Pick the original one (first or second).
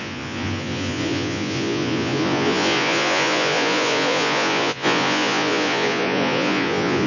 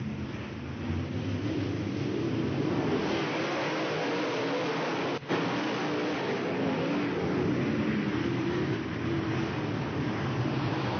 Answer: second